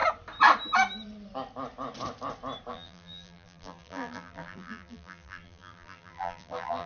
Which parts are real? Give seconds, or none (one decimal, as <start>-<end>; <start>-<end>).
0.0-2.7

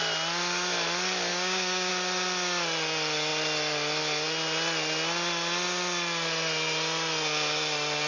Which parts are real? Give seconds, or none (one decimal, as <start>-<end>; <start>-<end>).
0.0-1.3; 1.9-8.1

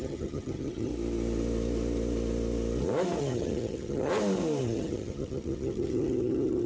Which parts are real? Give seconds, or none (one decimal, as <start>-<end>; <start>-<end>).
0.9-3.2; 4.1-4.6